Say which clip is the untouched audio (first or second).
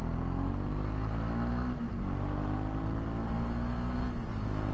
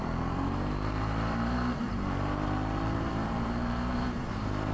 first